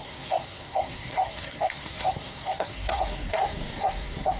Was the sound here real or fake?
fake